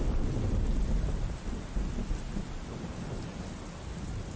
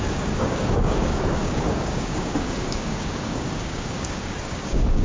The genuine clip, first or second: first